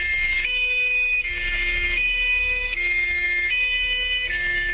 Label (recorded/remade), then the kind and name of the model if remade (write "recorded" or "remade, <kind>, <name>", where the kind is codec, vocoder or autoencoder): remade, codec, DAC